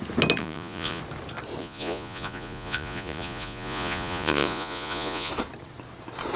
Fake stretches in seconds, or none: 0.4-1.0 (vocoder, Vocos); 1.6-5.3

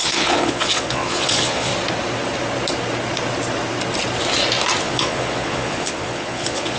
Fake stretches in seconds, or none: 0.0-1.7 (vocoder, Vocos); 4.8-6.8